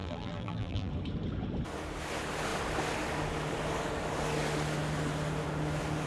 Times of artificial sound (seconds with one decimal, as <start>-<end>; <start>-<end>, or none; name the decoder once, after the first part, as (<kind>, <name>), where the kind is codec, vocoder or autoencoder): 0.0-0.9 (vocoder, BigVGAN v2)